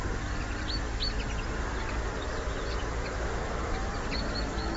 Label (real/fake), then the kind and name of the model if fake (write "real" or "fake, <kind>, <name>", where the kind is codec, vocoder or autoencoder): real